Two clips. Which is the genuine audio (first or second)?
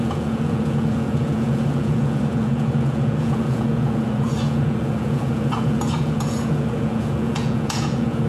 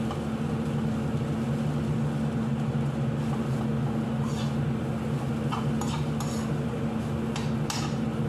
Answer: second